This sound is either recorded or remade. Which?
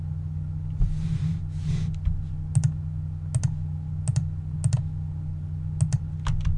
recorded